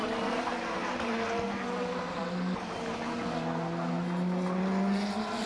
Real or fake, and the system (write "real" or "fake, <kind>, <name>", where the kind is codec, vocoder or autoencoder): real